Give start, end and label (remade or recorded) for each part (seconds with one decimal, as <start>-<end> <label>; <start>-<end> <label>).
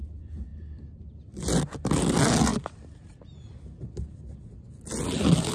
0.0-5.5 recorded